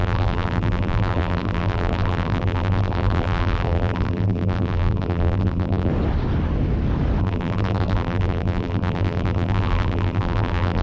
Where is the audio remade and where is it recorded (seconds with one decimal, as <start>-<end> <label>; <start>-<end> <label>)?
0.0-5.9 remade; 5.9-7.2 recorded; 7.2-10.8 remade